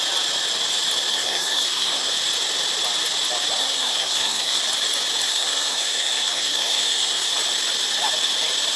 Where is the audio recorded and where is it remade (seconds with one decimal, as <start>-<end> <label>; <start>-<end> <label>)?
0.0-1.1 recorded; 1.1-2.1 remade; 2.1-3.6 recorded; 3.6-4.6 remade; 4.6-5.3 recorded; 5.3-7.3 remade; 7.3-8.8 recorded